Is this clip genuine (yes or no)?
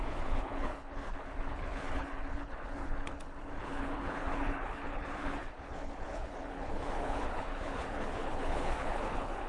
no